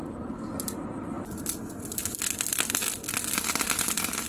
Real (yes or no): yes